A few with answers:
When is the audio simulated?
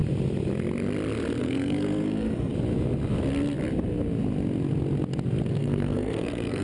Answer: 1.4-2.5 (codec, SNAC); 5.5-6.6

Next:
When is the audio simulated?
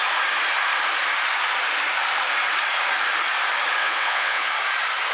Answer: 3.8-4.5 (vocoder, WaveNeXt)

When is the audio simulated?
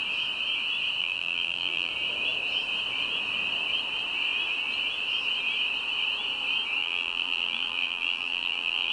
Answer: 1.0-1.9 (vocoder, BigVGAN v2); 6.8-8.9